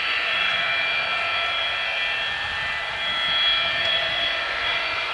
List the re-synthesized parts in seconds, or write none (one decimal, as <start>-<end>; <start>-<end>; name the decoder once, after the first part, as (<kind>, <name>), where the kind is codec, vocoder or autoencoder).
0.0-0.7 (vocoder, Vocos); 3.8-5.1